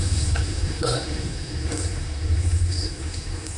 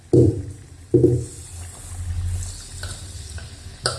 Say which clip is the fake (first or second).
first